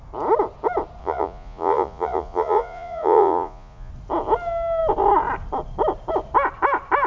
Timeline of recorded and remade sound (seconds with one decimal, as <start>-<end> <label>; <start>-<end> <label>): 0.0-1.0 recorded; 1.0-3.9 remade; 3.9-7.1 recorded